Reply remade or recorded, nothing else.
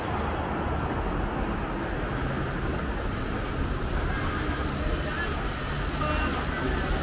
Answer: recorded